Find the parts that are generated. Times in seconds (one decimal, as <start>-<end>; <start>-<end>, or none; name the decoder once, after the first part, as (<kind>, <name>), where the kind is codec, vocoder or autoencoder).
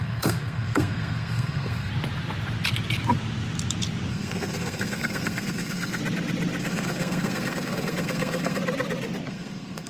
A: 0.0-1.9 (codec, SNAC); 4.1-6.0; 6.6-8.6; 9.3-9.9